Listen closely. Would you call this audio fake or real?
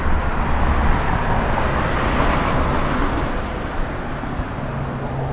real